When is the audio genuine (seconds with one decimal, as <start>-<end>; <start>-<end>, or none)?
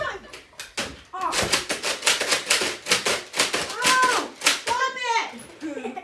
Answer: 0.0-6.0